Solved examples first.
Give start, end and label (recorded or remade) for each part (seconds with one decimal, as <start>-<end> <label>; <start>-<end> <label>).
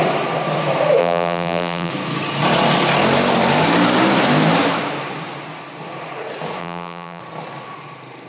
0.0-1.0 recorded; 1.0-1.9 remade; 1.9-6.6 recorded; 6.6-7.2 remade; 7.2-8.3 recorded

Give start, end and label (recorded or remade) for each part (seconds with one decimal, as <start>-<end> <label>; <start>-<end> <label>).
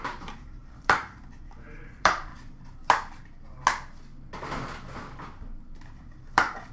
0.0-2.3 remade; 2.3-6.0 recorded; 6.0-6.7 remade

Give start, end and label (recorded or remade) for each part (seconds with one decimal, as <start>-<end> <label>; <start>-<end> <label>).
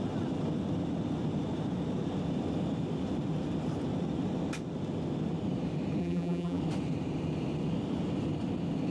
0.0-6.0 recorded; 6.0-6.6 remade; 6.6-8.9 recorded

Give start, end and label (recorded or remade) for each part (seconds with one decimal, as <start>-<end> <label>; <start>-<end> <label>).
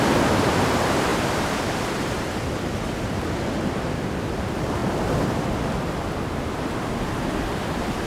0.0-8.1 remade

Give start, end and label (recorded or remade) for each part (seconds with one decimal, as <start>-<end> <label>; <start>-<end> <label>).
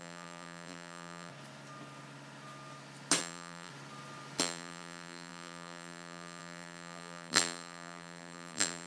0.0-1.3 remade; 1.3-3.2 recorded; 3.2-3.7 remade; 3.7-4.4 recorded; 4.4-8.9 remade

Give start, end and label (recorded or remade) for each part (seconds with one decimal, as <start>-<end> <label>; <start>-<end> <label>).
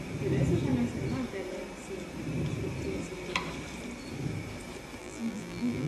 0.0-5.0 recorded; 5.0-5.9 remade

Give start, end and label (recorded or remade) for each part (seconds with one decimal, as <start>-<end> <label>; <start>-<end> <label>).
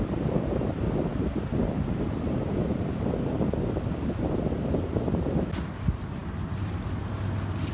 0.0-7.7 recorded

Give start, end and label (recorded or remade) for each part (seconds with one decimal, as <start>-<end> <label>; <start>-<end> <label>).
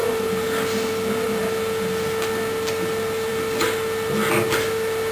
0.0-5.1 recorded